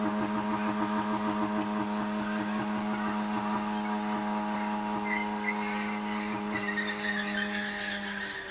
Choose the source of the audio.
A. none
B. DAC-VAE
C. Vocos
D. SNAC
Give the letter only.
A